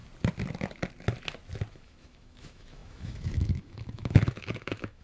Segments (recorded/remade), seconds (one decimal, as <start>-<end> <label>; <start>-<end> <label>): 0.0-1.7 recorded; 1.7-5.0 remade